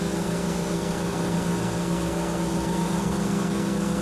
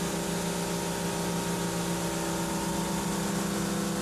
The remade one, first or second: first